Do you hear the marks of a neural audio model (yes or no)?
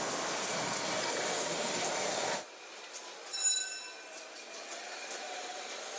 no